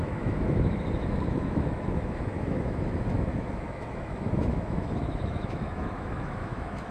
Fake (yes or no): yes